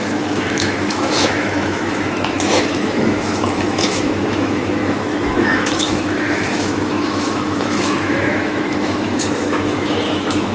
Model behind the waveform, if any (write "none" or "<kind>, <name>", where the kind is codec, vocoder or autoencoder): autoencoder, DAC-VAE